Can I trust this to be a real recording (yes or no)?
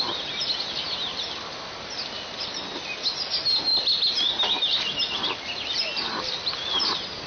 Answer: yes